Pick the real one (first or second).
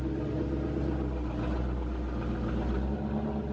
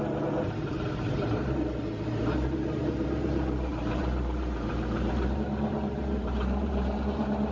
first